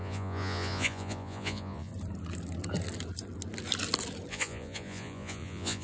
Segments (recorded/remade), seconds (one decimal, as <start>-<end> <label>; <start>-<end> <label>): 0.0-1.9 remade; 1.9-4.3 recorded; 4.3-5.8 remade